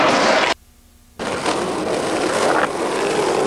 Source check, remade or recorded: recorded